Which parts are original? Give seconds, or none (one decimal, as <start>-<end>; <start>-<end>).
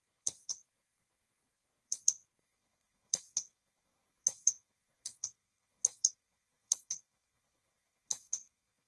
none